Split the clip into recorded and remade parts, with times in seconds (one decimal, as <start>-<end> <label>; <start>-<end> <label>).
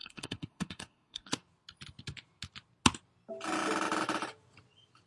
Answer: 0.0-1.3 remade; 1.3-5.1 recorded